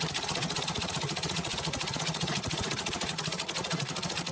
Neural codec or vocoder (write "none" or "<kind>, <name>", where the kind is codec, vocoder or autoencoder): vocoder, Vocos